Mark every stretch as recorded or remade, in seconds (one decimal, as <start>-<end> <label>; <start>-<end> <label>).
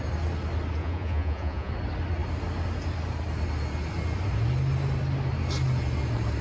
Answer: 0.0-0.8 recorded; 0.8-1.7 remade; 1.7-6.4 recorded